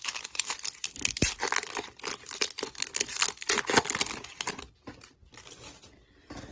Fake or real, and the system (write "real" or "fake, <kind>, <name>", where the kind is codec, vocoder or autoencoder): real